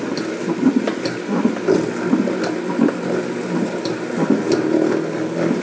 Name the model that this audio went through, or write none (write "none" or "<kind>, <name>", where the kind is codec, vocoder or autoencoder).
none